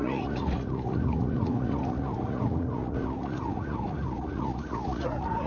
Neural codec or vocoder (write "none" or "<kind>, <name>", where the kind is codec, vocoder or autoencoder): vocoder, Vocos